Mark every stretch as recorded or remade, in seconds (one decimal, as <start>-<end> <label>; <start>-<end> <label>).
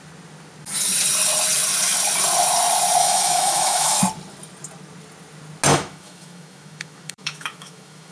0.0-3.0 recorded; 3.0-4.0 remade; 4.0-5.7 recorded; 5.7-8.1 remade